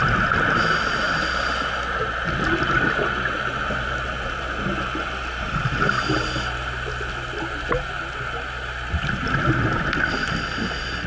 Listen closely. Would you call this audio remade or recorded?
recorded